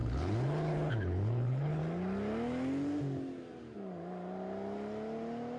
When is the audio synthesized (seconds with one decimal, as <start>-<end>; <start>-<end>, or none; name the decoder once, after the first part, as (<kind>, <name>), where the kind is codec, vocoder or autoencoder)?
0.0-1.8 (codec, HILCodec)